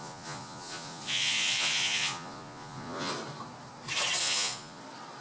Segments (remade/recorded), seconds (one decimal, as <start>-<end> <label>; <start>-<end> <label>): 0.0-3.1 remade; 3.1-4.2 recorded; 4.2-4.8 remade; 4.8-5.2 recorded

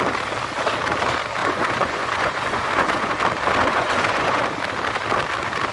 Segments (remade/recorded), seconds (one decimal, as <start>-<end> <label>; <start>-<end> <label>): 0.0-1.4 recorded; 1.4-3.2 remade; 3.2-3.6 recorded; 3.6-4.4 remade; 4.4-5.7 recorded

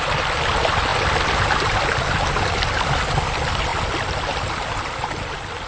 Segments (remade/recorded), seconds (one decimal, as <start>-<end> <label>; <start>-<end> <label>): 0.0-5.7 recorded

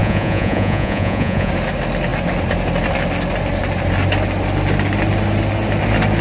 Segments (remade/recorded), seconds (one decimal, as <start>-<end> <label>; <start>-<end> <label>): 0.0-1.5 remade; 1.5-6.2 recorded

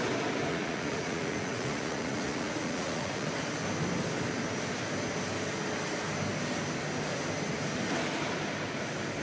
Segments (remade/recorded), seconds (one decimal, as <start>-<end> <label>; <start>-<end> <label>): 0.0-0.5 recorded; 0.5-3.3 remade; 3.3-9.2 recorded

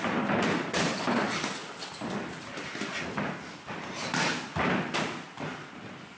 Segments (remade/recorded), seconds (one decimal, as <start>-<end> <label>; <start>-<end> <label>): 0.0-6.2 recorded

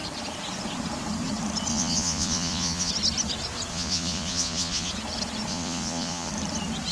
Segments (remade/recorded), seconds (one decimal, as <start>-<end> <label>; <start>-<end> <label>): 0.0-1.7 recorded; 1.7-2.9 remade; 2.9-3.7 recorded; 3.7-4.9 remade; 4.9-5.5 recorded; 5.5-6.3 remade; 6.3-6.9 recorded